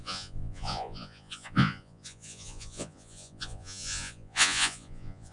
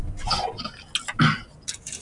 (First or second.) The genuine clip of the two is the second